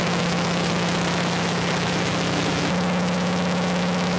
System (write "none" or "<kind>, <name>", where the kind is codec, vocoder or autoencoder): autoencoder, DAC-VAE